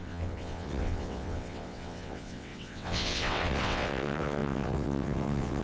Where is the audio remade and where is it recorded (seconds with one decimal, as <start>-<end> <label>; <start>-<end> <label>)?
0.0-5.6 remade